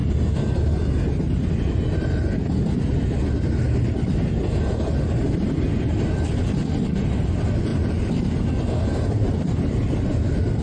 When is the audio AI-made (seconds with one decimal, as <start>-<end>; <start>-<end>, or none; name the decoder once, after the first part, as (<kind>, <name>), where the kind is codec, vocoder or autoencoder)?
none